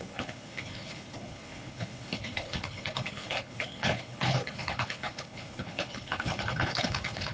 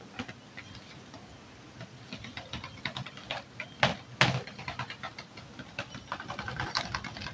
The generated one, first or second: first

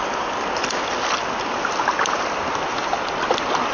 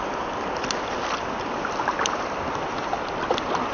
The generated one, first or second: second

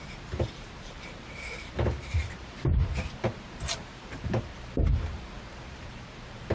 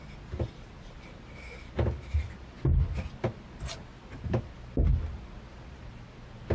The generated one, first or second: first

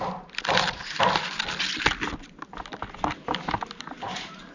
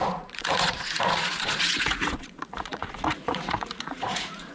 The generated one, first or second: second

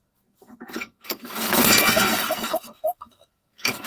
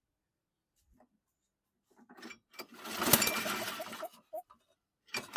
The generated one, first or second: first